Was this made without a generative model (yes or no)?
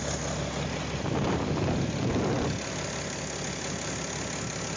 yes